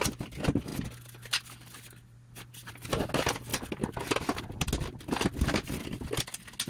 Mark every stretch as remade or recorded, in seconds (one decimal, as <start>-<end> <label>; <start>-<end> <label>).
0.0-6.7 recorded